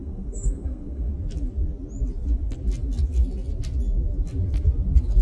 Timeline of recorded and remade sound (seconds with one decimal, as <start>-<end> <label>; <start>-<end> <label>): 0.0-1.1 remade; 1.1-5.2 recorded